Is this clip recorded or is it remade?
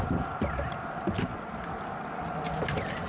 recorded